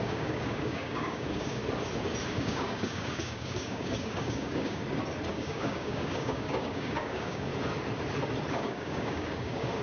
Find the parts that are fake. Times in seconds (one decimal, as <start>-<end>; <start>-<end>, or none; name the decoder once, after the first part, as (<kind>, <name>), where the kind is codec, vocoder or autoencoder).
0.0-1.6 (codec, DAC); 2.3-4.8; 5.3-7.5; 8.5-9.8